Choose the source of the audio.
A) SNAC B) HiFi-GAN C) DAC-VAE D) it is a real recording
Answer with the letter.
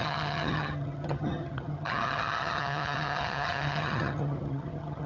B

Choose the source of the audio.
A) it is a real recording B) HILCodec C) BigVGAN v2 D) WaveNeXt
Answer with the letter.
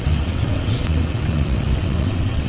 D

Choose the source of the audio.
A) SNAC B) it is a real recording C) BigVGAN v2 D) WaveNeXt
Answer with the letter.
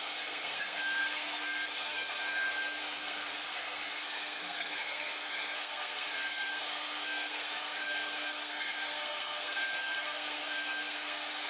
A